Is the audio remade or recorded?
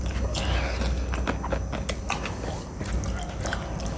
recorded